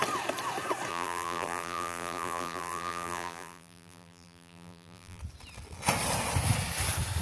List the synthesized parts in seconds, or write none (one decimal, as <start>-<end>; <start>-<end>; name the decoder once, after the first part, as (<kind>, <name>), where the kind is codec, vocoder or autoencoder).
0.9-5.2 (vocoder, BigVGAN v2)